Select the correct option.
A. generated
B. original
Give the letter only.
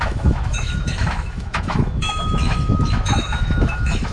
A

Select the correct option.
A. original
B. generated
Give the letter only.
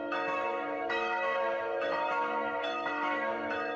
B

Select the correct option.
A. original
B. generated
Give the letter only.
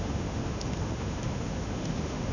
B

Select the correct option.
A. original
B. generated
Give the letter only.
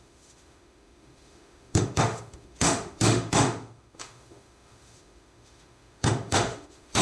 B